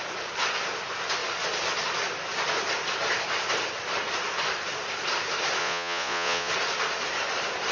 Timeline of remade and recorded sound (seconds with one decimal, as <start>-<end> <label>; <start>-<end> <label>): 0.0-5.6 recorded; 5.6-6.5 remade; 6.5-7.7 recorded